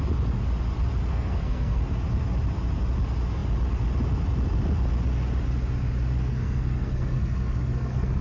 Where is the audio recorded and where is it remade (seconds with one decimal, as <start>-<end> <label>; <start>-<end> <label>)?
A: 0.0-1.1 recorded; 1.1-1.8 remade; 1.8-6.3 recorded; 6.3-8.2 remade